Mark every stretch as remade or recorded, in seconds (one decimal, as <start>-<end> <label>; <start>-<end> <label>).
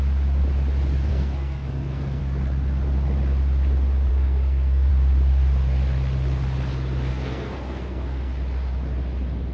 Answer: 0.0-1.1 recorded; 1.1-2.2 remade; 2.2-4.1 recorded; 4.1-4.9 remade; 4.9-7.1 recorded; 7.1-8.3 remade; 8.3-9.5 recorded